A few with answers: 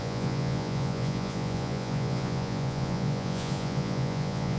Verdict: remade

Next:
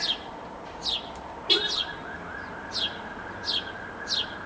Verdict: recorded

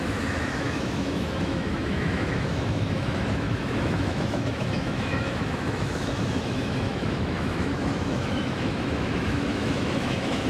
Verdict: remade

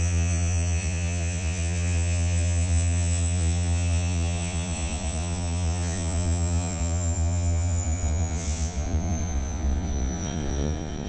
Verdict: remade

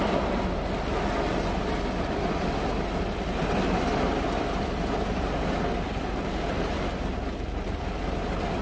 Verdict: remade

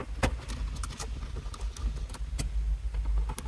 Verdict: recorded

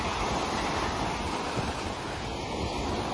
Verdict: recorded